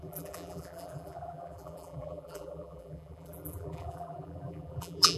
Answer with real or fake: fake